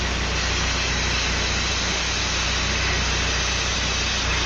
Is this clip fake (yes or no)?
no